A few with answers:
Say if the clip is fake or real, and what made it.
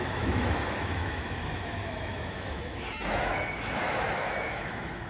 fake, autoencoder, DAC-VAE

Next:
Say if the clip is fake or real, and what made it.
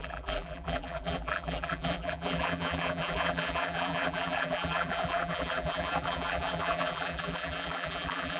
fake, vocoder, BigVGAN v2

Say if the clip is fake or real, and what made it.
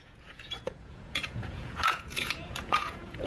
fake, vocoder, Vocos